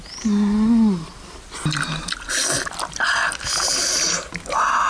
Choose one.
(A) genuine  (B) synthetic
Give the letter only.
A